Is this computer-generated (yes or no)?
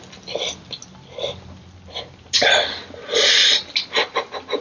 no